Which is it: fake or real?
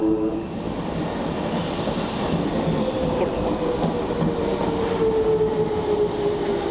real